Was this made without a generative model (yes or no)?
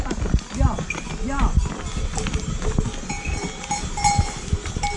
yes